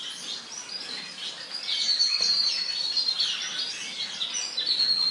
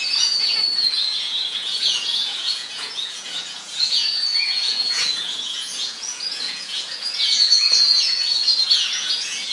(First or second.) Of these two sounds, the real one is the first